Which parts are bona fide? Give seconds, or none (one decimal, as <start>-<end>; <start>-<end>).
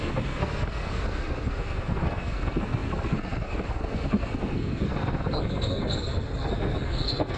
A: none